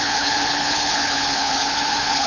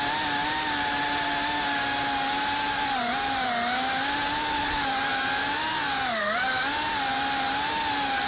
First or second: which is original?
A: second